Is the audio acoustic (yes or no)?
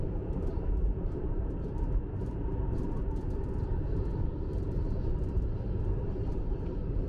no